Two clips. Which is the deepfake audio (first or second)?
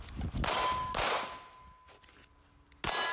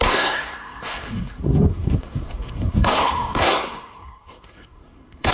second